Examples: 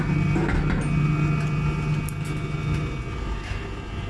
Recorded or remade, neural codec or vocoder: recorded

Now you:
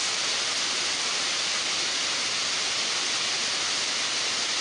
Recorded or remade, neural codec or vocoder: recorded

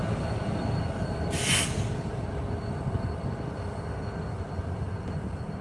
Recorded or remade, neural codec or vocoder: recorded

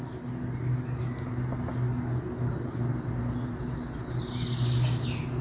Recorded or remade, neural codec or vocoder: recorded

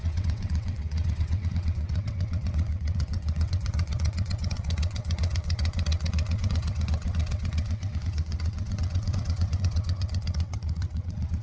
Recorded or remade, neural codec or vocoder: remade, vocoder, WaveNeXt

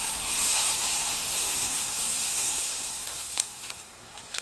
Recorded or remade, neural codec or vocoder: remade, codec, SNAC